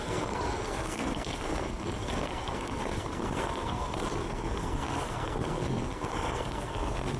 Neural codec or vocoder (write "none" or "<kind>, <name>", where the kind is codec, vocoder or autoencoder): codec, SNAC